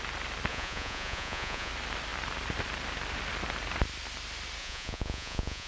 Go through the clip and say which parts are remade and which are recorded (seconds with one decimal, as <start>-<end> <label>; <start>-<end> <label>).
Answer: 0.0-0.5 recorded; 0.5-1.7 remade; 1.7-4.6 recorded; 4.6-5.7 remade